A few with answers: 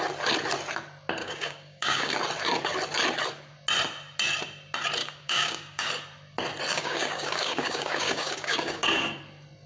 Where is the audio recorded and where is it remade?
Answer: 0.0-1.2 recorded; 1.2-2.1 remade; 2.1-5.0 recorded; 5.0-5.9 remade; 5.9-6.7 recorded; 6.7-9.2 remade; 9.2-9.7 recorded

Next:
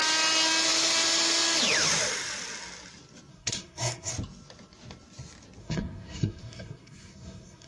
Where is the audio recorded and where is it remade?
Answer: 0.0-3.3 recorded; 3.3-4.1 remade; 4.1-5.6 recorded; 5.6-7.7 remade

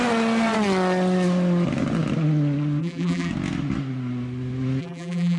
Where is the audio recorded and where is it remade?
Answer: 0.0-2.8 recorded; 2.8-3.3 remade; 3.3-4.8 recorded; 4.8-5.4 remade